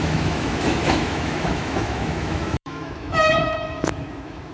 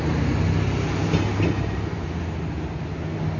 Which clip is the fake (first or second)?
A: first